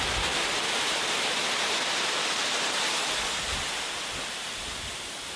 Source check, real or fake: real